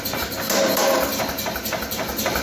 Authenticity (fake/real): real